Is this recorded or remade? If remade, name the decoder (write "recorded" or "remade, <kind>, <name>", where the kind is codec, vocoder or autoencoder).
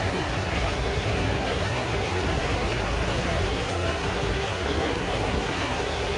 remade, codec, SNAC